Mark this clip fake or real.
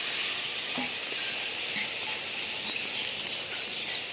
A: real